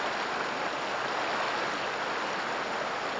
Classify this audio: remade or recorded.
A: recorded